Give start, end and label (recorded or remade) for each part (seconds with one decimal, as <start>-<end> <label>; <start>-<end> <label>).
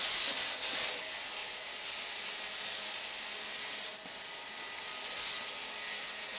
0.0-1.4 recorded; 1.4-2.6 remade; 2.6-3.9 recorded; 3.9-4.6 remade; 4.6-6.4 recorded